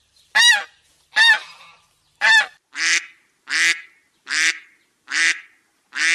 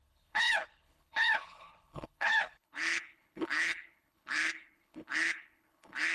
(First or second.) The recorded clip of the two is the first